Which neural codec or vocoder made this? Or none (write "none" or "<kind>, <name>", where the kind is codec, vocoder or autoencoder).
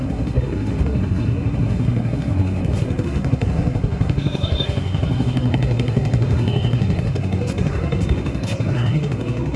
codec, SNAC